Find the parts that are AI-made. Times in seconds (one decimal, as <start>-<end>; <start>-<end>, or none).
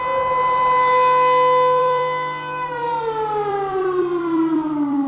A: 1.8-5.1